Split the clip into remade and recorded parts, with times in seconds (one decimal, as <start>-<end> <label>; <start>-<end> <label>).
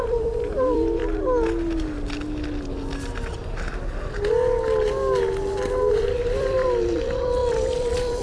0.0-1.0 remade; 1.0-5.9 recorded; 5.9-8.2 remade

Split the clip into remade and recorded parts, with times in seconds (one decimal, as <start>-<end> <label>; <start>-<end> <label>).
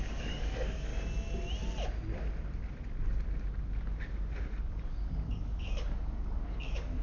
0.0-0.9 remade; 0.9-4.6 recorded; 4.6-7.0 remade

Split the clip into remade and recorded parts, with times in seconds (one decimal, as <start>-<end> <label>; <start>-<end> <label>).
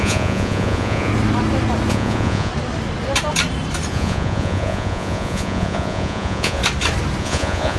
0.0-1.1 remade; 1.1-1.9 recorded; 1.9-2.5 remade; 2.5-3.9 recorded; 3.9-6.6 remade; 6.6-7.2 recorded; 7.2-7.8 remade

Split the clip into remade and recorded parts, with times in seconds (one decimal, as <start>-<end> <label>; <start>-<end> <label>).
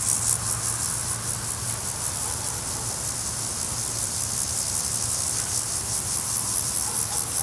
0.0-7.4 recorded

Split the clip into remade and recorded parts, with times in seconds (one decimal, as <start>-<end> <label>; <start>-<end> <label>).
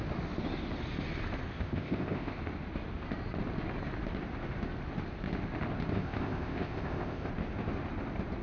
0.0-1.5 recorded; 1.5-2.4 remade; 2.4-5.9 recorded; 5.9-7.3 remade; 7.3-8.4 recorded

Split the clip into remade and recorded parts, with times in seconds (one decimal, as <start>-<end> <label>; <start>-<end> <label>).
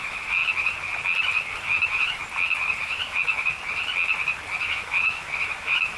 0.0-0.4 remade; 0.4-1.5 recorded; 1.5-2.2 remade; 2.2-2.8 recorded; 2.8-3.5 remade; 3.5-4.6 recorded; 4.6-6.0 remade